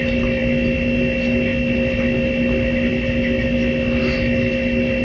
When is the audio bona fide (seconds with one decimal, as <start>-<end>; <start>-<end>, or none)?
0.0-5.0